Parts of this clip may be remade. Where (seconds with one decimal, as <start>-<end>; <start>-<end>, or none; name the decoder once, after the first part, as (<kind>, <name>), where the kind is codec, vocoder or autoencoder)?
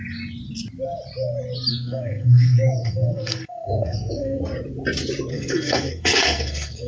1.7-4.4 (codec, SNAC); 5.3-6.9